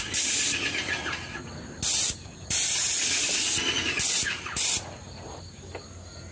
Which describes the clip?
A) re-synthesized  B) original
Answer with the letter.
B